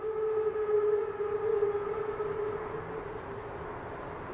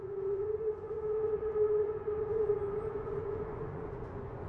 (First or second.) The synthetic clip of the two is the second